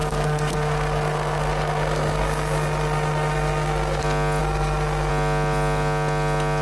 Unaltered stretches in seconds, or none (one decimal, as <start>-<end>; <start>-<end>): 4.0-4.4; 5.1-6.6